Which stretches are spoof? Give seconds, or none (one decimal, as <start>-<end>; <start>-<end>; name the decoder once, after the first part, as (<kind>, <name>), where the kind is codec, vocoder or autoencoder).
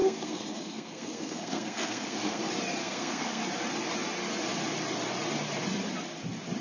0.0-2.4 (codec, SNAC); 2.8-3.4